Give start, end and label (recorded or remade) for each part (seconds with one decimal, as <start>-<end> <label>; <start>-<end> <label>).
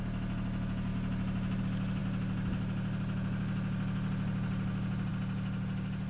0.0-6.1 recorded